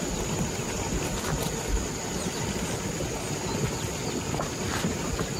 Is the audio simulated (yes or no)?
no